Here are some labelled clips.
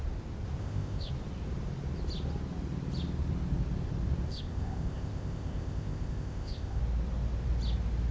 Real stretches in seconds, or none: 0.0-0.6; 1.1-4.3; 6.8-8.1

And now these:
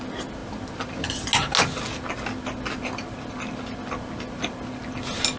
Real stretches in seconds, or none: 0.0-5.4

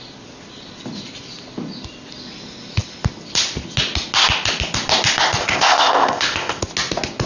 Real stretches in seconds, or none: 0.0-5.4; 6.6-7.3

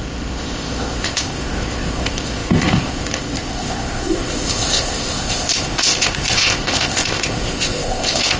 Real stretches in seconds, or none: none

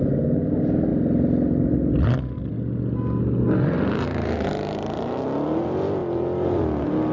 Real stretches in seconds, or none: 0.0-7.1

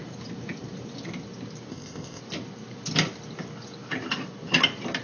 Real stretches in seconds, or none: 0.0-1.7; 2.2-5.0